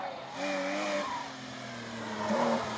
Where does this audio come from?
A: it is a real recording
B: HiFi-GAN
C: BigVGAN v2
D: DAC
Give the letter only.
A